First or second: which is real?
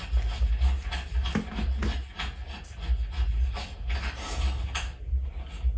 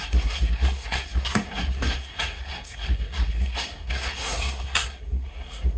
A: first